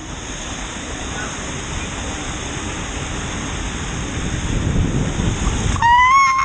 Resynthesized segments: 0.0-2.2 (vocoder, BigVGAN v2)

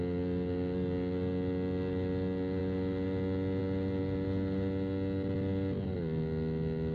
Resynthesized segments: none

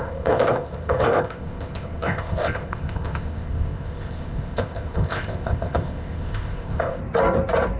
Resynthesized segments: 0.0-7.0 (codec, ZipCodec)

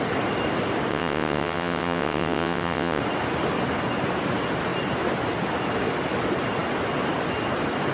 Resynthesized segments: 0.9-3.0 (vocoder, WaveNeXt)